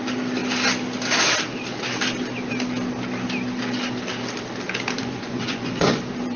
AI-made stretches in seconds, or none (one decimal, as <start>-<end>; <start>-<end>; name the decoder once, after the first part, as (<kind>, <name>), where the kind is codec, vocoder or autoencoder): 5.0-6.0 (vocoder, Vocos)